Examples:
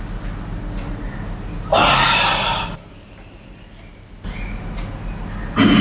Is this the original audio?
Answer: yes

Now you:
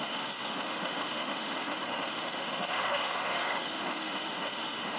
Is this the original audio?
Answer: no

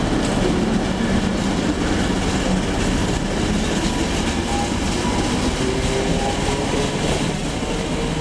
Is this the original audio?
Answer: yes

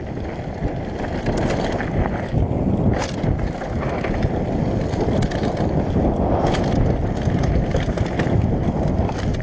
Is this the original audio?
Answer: yes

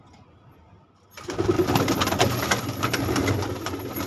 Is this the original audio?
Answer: yes